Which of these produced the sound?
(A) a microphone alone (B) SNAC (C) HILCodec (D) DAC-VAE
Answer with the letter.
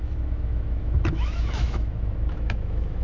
D